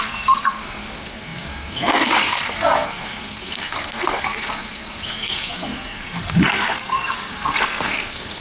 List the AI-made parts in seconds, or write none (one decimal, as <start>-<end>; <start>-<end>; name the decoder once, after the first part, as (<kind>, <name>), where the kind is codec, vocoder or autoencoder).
0.0-8.4 (codec, SNAC)